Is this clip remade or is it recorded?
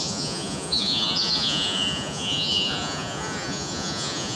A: remade